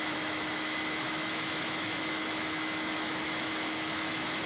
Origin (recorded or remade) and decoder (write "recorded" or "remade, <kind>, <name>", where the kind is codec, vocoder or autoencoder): remade, autoencoder, DAC-VAE